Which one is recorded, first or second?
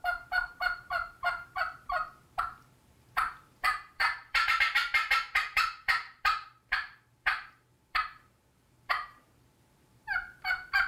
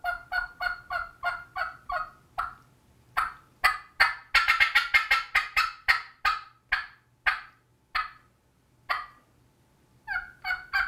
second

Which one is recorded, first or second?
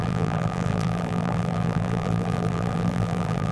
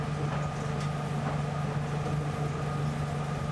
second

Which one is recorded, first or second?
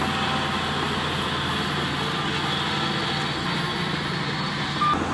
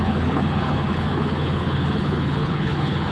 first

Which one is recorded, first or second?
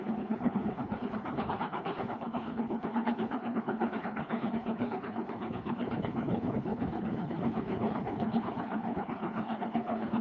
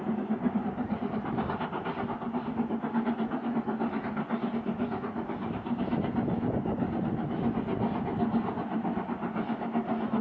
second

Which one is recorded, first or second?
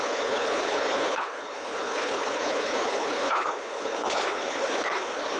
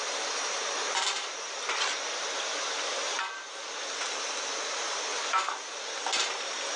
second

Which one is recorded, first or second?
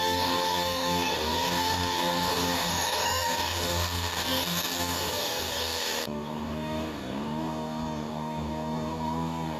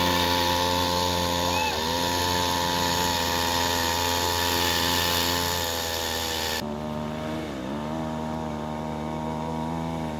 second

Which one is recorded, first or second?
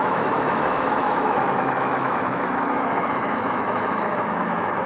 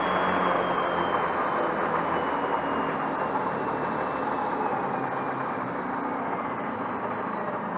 second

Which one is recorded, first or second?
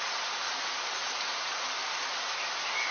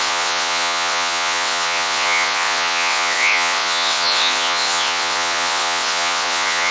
first